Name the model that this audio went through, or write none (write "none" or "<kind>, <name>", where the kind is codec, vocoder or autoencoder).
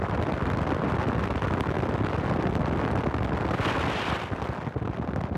none